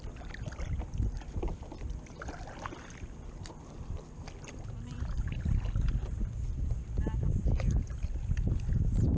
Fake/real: fake